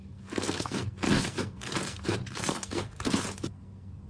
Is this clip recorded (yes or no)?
no